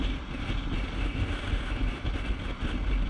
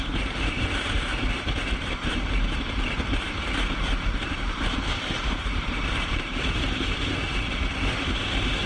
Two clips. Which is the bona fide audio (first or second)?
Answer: first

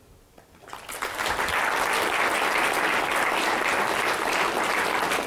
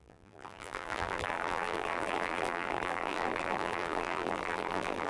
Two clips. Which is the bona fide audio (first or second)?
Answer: first